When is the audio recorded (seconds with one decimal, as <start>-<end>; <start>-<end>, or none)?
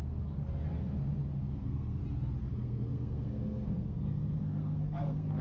0.4-1.5; 2.0-2.5